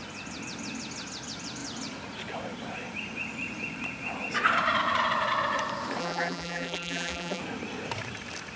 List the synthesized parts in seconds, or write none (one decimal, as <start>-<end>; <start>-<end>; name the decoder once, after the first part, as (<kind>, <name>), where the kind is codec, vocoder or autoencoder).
6.0-7.4 (vocoder, BigVGAN v2)